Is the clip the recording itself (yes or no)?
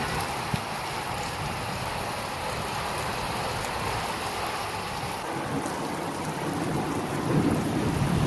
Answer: yes